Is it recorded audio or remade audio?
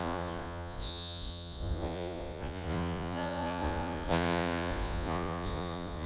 remade